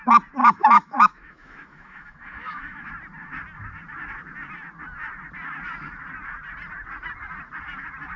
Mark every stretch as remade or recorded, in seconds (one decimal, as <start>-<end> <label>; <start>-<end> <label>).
0.0-0.4 recorded; 0.4-2.9 remade; 2.9-8.2 recorded